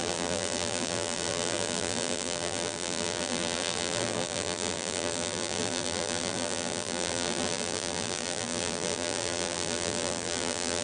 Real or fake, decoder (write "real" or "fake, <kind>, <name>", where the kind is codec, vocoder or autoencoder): fake, vocoder, BigVGAN v2